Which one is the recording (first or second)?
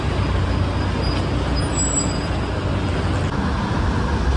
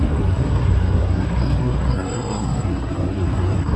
first